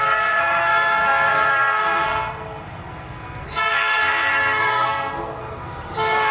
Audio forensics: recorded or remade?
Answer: remade